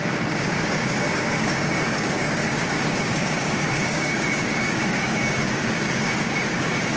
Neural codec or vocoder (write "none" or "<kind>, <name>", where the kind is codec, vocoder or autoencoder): codec, DAC